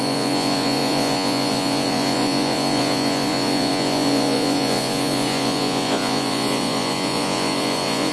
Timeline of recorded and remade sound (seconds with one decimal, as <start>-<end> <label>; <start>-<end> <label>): 0.0-8.1 remade